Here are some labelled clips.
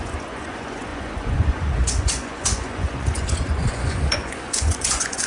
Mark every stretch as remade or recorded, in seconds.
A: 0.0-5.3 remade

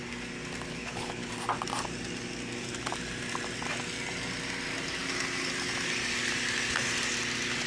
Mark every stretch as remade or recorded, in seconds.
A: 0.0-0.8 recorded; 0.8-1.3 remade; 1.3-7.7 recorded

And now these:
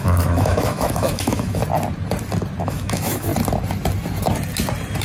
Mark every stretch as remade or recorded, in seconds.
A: 0.0-1.6 remade; 1.6-2.6 recorded; 2.6-3.3 remade; 3.3-5.0 recorded

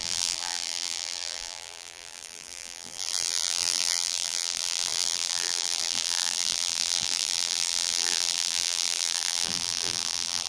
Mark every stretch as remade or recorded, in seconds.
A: 0.0-10.5 remade